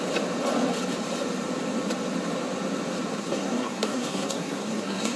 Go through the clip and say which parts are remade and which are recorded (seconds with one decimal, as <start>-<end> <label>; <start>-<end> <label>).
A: 0.0-3.1 recorded; 3.1-5.2 remade